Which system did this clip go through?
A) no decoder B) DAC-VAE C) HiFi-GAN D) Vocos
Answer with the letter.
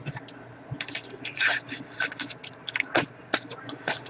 A